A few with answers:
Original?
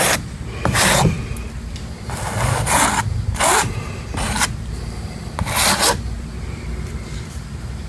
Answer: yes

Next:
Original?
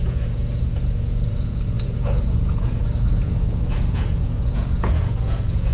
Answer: no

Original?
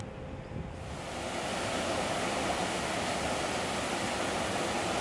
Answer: yes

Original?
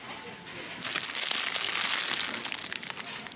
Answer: yes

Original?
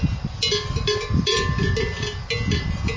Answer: yes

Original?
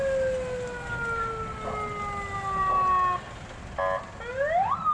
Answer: yes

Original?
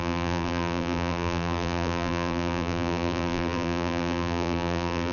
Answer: no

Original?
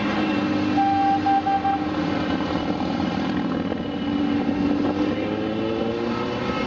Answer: yes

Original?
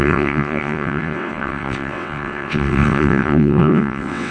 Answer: no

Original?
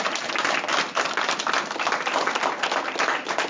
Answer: yes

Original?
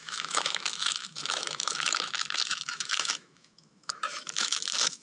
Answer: no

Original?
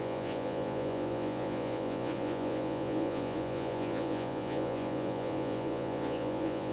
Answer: no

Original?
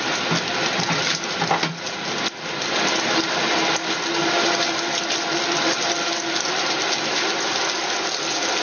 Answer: yes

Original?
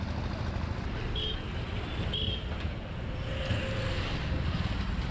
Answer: yes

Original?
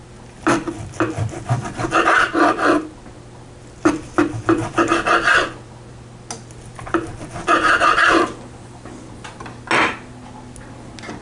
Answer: yes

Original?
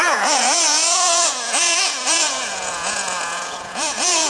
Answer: no